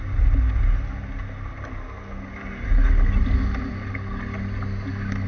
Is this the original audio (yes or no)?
yes